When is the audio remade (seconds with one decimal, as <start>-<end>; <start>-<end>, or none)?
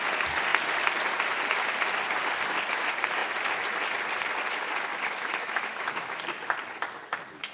4.9-6.2